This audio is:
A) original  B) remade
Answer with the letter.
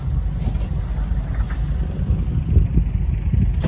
A